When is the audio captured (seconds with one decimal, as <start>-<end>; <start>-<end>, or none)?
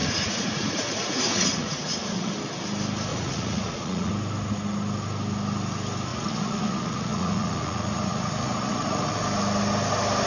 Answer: 2.3-3.1; 4.1-6.1; 9.2-10.3